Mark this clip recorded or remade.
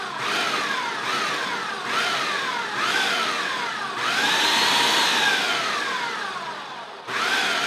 recorded